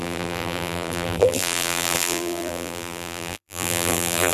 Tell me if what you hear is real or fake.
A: fake